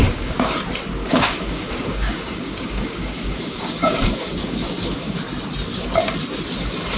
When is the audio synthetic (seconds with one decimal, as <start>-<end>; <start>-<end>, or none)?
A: 0.0-0.5; 1.0-5.2